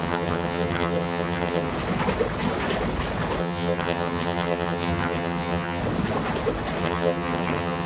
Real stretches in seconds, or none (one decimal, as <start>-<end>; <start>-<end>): 1.7-3.4; 5.8-6.8